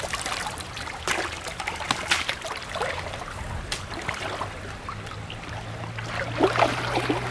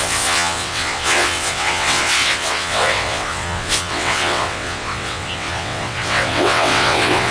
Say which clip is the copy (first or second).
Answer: second